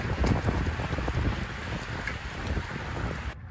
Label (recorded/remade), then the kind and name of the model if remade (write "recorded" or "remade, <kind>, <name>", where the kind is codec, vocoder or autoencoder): remade, vocoder, BigVGAN v2